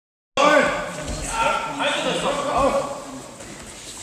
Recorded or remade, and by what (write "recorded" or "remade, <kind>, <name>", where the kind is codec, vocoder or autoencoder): recorded